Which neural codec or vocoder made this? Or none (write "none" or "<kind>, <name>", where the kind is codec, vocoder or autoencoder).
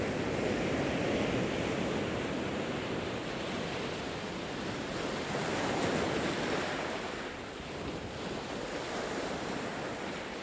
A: vocoder, BigVGAN v2